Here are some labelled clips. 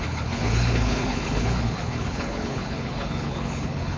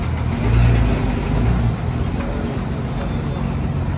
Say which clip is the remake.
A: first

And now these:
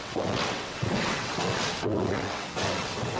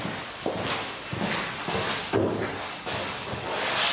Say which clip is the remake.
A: first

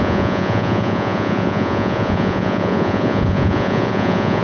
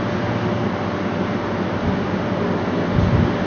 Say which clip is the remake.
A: first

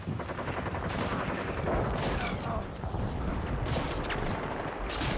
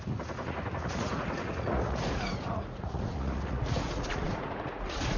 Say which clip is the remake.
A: second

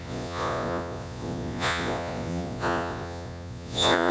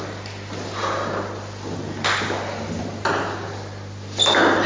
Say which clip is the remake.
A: first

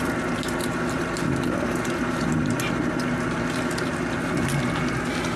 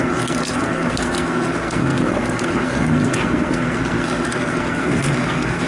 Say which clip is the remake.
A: second